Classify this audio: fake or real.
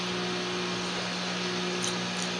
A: real